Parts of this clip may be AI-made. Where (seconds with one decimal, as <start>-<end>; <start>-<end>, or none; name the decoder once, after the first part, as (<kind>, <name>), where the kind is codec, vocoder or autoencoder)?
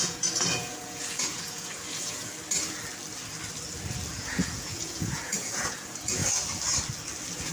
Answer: 0.0-2.3 (vocoder, Vocos); 4.1-6.2